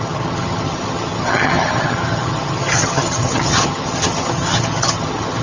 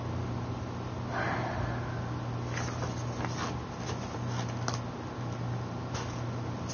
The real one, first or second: second